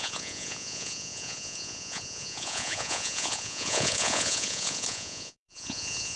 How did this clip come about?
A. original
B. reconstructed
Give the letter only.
B